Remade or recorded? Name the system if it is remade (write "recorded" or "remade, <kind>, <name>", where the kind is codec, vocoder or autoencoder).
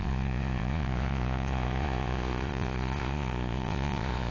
remade, vocoder, Vocos